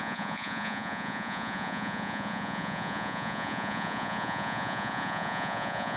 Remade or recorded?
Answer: remade